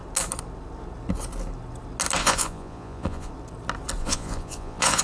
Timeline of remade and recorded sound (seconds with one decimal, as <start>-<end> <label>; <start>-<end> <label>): 0.0-2.2 recorded; 2.2-3.3 remade; 3.3-4.0 recorded; 4.0-5.0 remade